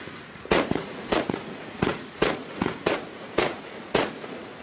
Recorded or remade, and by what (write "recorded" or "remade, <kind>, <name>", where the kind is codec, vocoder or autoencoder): remade, vocoder, Vocos